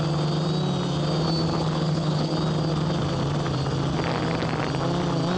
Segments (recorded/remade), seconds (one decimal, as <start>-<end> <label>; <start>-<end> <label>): 0.0-1.5 recorded; 1.5-2.3 remade; 2.3-5.4 recorded